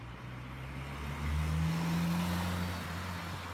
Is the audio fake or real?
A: real